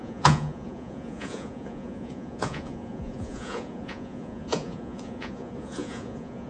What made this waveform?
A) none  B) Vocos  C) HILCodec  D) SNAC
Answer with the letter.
B